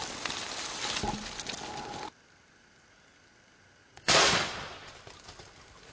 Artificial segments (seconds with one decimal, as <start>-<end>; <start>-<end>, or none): 3.8-4.9

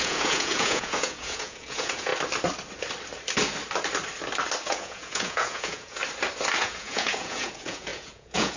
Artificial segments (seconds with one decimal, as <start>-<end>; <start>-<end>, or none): 0.0-2.1; 4.7-6.0; 6.6-8.6

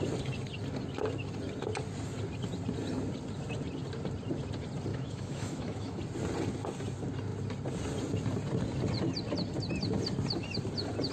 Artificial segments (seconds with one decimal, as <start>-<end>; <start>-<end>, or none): 4.9-6.0

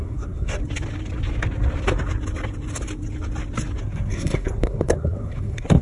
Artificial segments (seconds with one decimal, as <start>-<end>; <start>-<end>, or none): 0.0-0.6; 3.8-5.8

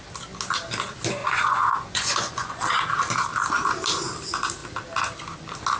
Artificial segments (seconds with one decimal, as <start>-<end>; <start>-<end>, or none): 1.2-2.6

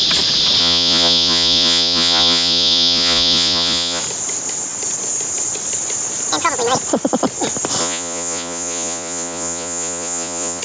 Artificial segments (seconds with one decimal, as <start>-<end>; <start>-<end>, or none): 0.6-4.0; 7.8-10.6